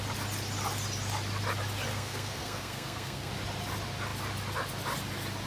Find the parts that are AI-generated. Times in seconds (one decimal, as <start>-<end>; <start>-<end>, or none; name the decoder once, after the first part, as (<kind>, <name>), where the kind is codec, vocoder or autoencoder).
1.9-3.3 (codec, SNAC)